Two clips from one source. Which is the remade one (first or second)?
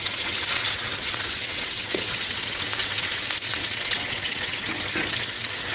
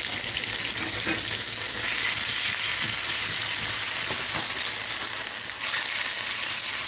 first